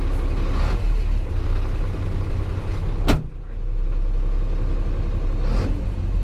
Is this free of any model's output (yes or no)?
yes